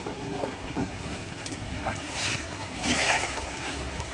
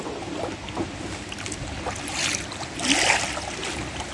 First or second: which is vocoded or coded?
first